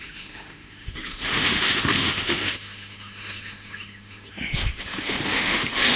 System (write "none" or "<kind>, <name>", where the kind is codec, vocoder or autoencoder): autoencoder, DAC-VAE